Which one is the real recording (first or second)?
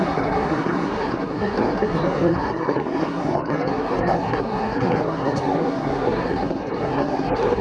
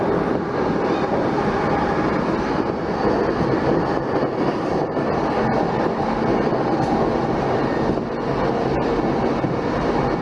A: second